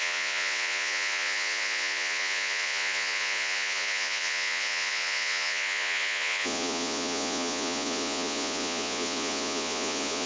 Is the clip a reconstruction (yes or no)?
yes